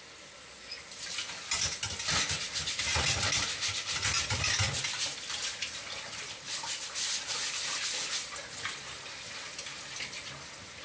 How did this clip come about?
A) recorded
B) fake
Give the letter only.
A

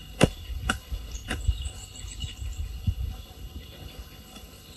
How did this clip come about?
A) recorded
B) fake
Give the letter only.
B